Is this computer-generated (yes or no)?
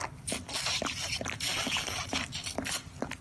no